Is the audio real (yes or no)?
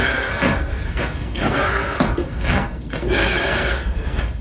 no